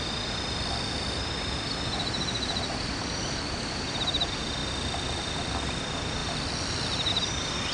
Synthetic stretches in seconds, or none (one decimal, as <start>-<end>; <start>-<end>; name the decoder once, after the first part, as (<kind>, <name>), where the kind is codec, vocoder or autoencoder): none